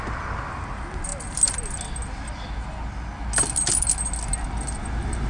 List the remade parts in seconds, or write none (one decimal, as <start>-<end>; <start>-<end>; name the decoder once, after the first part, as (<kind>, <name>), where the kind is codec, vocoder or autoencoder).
none